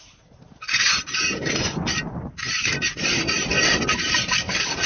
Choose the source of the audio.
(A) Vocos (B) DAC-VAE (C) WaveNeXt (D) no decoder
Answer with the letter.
D